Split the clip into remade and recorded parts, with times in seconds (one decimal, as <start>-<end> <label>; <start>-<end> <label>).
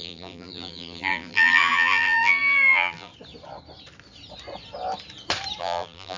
0.0-3.1 remade; 3.1-5.6 recorded; 5.6-6.2 remade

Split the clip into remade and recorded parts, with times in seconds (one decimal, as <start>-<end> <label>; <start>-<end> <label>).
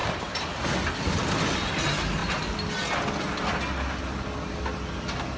0.0-5.4 recorded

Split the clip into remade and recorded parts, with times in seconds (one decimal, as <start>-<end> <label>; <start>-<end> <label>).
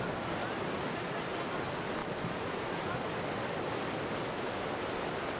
0.0-0.4 recorded; 0.4-0.9 remade; 0.9-5.4 recorded